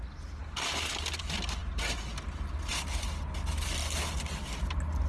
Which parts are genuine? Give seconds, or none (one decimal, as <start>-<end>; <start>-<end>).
0.0-5.1

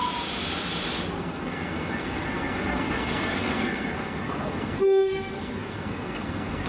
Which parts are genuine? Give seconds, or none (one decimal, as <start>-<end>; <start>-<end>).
0.0-1.2

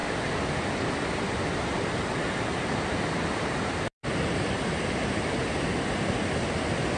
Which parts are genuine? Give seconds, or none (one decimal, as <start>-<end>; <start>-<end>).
1.0-2.2; 5.9-7.0